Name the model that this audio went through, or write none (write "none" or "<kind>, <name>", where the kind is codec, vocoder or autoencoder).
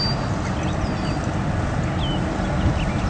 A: none